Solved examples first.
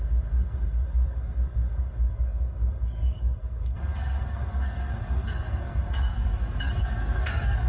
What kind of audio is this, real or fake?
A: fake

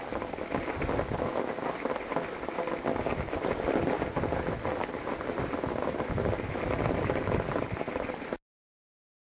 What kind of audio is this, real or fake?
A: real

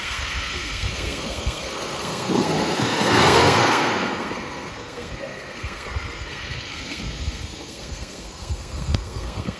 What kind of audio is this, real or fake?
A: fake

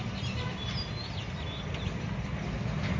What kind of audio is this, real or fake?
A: real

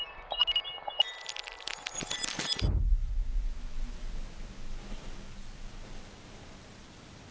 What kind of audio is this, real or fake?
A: real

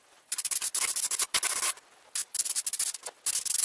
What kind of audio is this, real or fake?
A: real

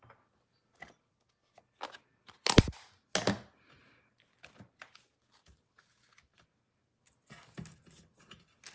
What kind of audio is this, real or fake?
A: real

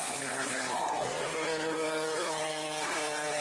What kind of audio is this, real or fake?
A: fake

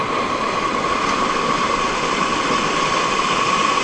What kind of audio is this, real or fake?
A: real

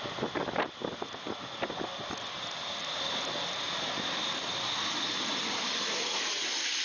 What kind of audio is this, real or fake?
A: real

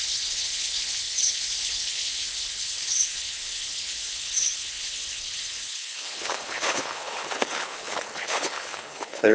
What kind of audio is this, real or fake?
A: fake